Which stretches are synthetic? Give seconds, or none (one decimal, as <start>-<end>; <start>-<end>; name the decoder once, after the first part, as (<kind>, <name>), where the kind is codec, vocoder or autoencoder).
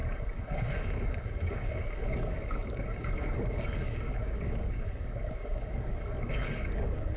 0.0-7.2 (codec, DAC)